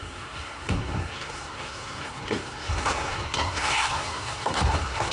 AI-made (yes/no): yes